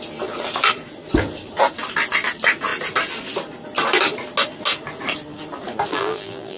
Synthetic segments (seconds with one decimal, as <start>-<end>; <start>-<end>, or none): 5.9-6.6